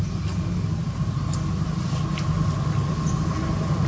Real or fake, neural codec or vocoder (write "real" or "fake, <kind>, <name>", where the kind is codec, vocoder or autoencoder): real